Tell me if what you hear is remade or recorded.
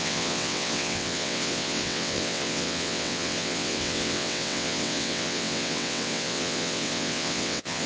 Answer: remade